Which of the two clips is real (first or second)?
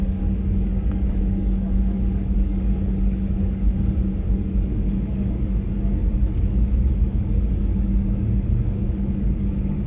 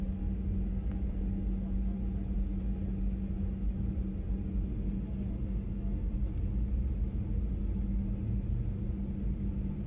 second